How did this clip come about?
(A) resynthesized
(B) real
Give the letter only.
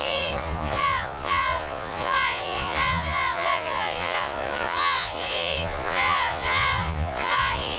A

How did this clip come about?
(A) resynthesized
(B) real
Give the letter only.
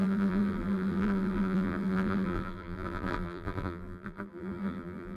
A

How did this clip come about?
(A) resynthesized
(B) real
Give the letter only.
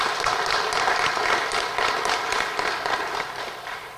B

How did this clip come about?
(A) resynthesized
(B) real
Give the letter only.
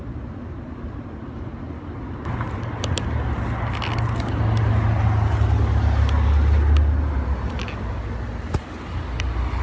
B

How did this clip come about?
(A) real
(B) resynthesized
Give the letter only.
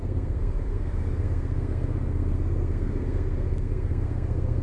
B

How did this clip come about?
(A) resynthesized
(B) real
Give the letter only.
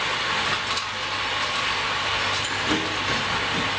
B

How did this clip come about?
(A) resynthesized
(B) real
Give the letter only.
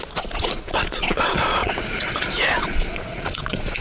A